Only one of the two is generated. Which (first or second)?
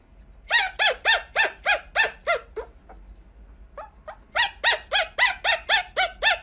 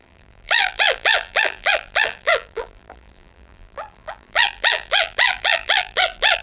second